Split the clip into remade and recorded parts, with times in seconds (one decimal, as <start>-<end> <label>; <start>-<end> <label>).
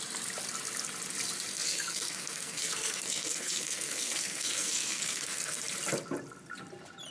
0.0-1.5 recorded; 1.5-5.6 remade; 5.6-7.1 recorded